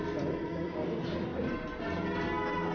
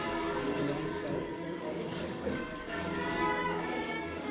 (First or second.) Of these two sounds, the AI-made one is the second